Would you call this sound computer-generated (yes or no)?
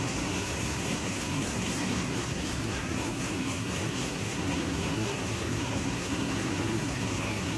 yes